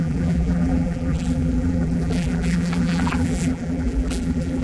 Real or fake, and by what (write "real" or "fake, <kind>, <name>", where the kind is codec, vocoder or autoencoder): fake, vocoder, BigVGAN v2